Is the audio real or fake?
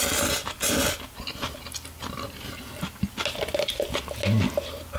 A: real